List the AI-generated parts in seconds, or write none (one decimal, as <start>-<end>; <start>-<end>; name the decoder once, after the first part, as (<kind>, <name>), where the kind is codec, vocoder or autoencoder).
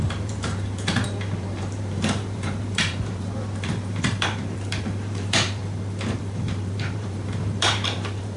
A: 0.0-5.6 (vocoder, BigVGAN v2); 6.2-8.4